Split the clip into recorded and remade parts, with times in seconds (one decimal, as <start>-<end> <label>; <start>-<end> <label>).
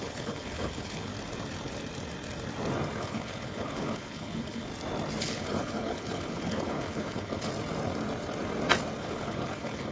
0.0-1.1 remade; 1.1-3.0 recorded; 3.0-4.7 remade; 4.7-5.2 recorded; 5.2-7.5 remade; 7.5-9.0 recorded; 9.0-9.9 remade